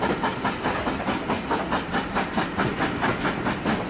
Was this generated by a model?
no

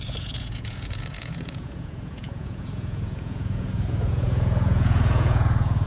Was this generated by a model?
yes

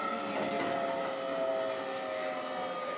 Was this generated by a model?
no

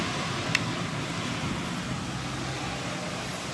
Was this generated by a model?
no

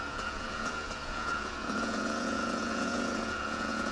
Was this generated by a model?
yes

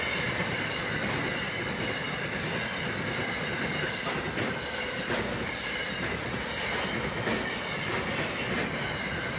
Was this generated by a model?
no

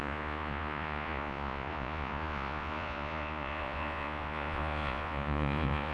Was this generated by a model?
yes